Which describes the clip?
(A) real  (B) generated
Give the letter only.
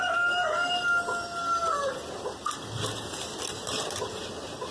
A